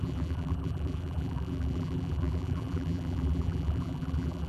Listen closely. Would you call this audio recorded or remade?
remade